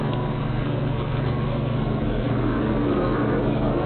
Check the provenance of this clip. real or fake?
fake